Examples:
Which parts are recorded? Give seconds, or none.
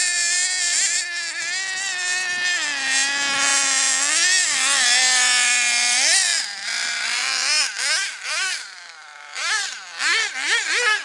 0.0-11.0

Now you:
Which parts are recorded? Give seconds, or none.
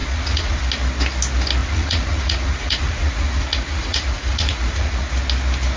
0.6-1.6; 5.1-5.8